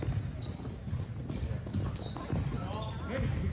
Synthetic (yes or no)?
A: no